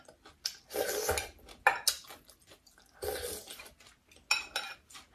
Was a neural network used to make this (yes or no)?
no